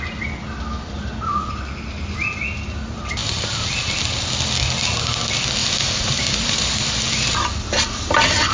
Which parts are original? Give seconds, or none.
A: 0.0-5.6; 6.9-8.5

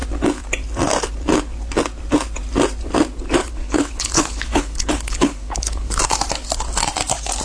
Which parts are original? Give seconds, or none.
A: 0.0-3.4; 6.0-7.4

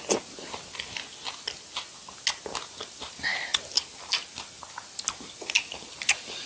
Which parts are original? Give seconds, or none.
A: 0.0-6.5

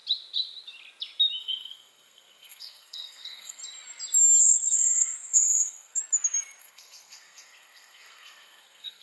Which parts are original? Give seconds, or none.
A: 0.0-1.4; 3.6-4.4; 6.0-6.6

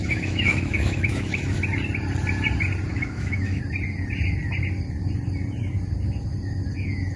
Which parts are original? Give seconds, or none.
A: 1.6-2.9; 3.6-7.2

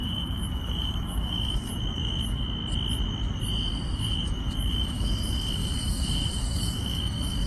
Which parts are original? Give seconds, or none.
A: 2.6-4.0

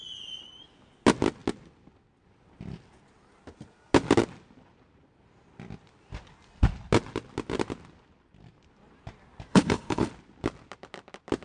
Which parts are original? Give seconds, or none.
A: 0.0-9.5; 10.1-11.4

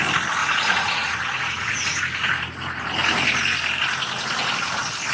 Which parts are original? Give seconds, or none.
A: 0.0-0.4; 2.0-5.1